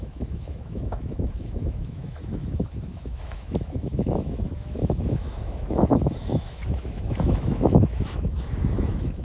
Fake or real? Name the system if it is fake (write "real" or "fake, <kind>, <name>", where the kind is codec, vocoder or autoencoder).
fake, autoencoder, DAC-VAE